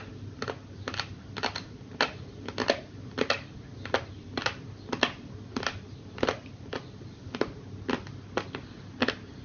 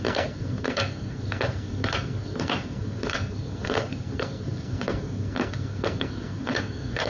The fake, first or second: second